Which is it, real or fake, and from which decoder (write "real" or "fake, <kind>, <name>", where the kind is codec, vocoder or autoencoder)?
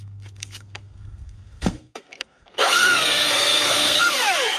fake, codec, SNAC